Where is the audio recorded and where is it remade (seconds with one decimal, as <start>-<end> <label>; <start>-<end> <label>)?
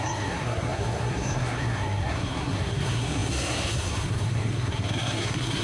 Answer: 0.0-5.6 remade